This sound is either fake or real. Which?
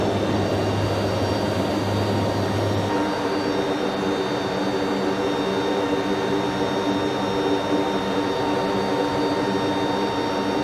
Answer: real